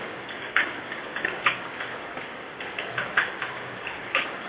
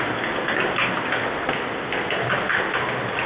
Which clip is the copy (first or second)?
first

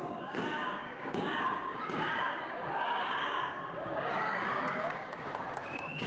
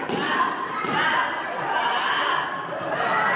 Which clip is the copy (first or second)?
first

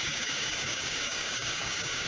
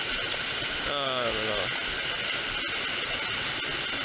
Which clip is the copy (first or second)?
first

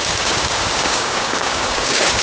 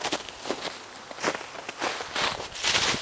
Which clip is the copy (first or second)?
first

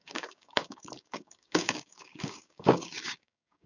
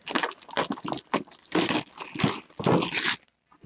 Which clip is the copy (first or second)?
first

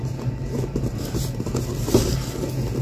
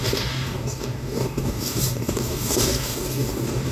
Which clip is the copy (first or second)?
second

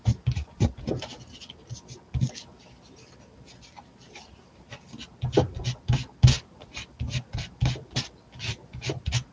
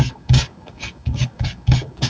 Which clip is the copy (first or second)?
second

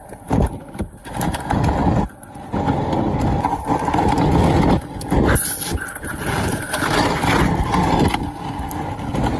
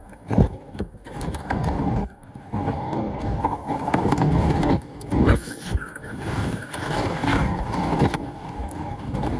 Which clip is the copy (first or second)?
second